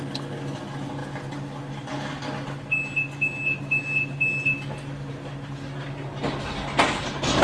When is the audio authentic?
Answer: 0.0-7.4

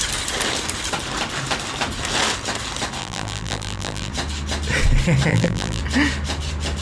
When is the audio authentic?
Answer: 0.0-3.0; 4.1-5.3; 5.8-6.8